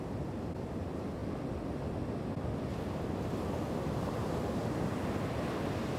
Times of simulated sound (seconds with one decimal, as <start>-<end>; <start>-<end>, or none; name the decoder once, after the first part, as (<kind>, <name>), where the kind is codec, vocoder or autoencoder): none

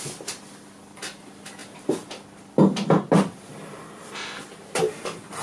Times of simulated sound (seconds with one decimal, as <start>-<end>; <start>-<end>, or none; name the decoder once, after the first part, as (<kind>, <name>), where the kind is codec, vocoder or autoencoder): none

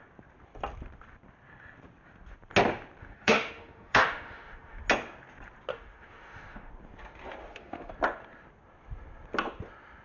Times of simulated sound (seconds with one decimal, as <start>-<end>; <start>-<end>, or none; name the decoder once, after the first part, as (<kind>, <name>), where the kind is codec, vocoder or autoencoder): 3.0-4.8 (autoencoder, DAC-VAE); 5.7-6.7; 7.4-7.9

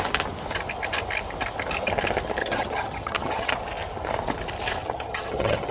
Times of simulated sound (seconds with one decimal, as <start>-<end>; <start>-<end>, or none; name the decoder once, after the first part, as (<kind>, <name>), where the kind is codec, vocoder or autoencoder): 2.4-3.5 (vocoder, HiFi-GAN); 4.8-5.7

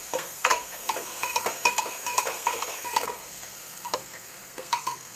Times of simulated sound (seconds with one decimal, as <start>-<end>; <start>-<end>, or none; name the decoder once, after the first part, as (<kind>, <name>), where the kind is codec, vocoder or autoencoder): 0.0-5.2 (codec, SNAC)

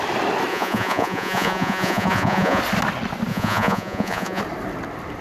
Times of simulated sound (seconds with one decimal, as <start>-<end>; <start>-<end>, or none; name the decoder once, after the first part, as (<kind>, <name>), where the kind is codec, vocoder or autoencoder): 0.5-2.6 (vocoder, Vocos); 3.3-4.4

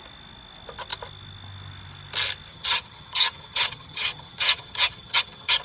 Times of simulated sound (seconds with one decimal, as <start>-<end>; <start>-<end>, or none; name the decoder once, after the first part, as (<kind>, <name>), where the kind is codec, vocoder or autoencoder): 2.5-5.6 (vocoder, HiFi-GAN)